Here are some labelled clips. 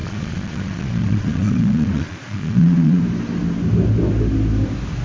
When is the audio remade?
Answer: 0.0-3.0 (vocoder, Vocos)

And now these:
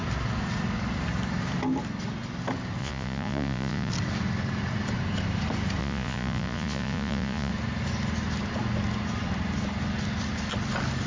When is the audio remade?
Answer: 2.8-3.9 (vocoder, Vocos); 5.8-7.5

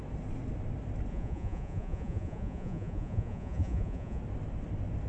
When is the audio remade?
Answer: 1.1-4.2 (vocoder, Vocos)

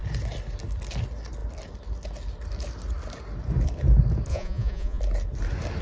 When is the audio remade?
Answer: 4.3-5.0 (vocoder, Vocos)

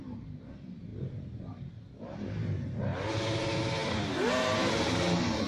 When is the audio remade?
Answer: none